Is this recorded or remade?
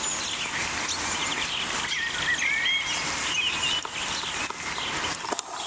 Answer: recorded